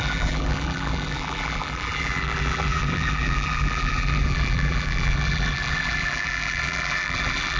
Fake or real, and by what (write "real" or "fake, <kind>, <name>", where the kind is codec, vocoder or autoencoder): fake, vocoder, BigVGAN v2